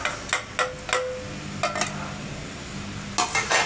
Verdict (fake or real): real